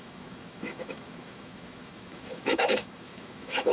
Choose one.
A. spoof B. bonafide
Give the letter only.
A